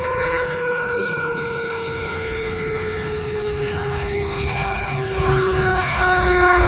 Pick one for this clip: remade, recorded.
remade